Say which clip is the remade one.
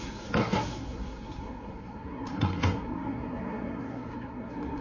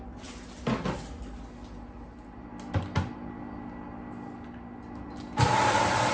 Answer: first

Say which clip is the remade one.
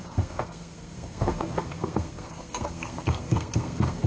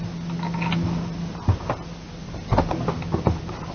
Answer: first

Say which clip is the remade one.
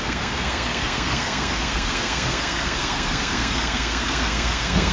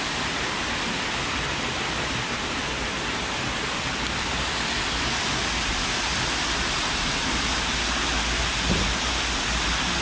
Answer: first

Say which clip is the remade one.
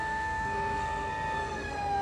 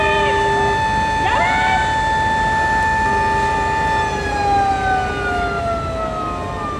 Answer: first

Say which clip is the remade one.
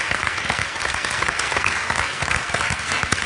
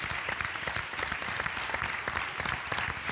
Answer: first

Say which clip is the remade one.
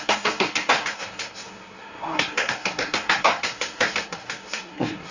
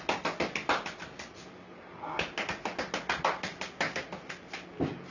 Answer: first